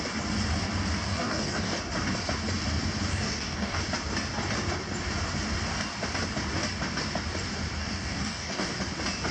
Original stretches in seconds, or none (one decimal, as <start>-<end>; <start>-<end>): 0.0-1.1; 1.8-3.1; 3.8-7.8; 8.8-9.3